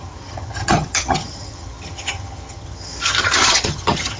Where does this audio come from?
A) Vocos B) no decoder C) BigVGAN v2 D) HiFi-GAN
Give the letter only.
D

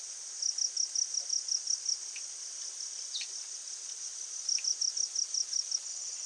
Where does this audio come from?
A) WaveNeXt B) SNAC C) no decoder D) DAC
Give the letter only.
C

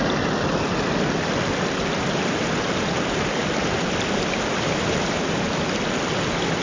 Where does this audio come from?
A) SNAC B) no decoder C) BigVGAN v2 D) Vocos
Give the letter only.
B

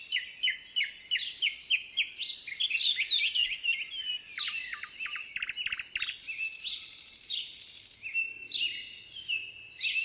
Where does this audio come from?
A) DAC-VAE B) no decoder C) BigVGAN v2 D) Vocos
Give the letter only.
B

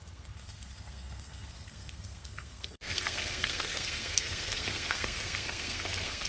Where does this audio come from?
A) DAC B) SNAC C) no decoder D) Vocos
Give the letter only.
B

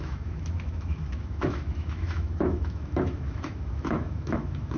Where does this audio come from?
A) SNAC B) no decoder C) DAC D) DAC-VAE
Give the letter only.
D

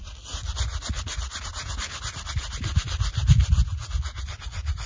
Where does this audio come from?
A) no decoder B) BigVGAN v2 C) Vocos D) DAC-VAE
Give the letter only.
A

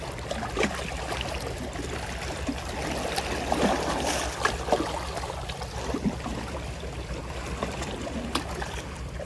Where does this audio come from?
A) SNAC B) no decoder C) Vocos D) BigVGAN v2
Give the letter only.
B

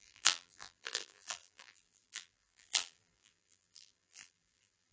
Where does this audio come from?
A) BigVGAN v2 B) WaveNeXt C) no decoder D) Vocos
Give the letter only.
A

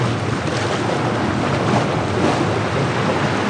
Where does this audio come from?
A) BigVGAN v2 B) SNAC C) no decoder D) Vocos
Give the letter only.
C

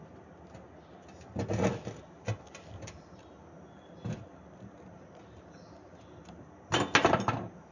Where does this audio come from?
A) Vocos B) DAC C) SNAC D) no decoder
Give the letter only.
D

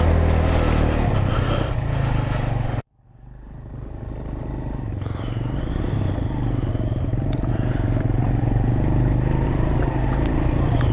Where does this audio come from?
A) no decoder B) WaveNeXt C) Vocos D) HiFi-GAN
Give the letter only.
A